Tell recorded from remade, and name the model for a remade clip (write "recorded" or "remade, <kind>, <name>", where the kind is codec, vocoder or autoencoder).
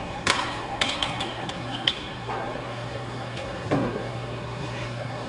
remade, codec, SNAC